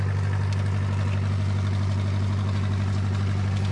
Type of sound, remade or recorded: recorded